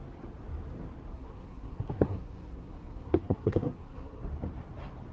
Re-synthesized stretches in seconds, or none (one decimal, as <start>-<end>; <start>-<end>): 1.1-4.2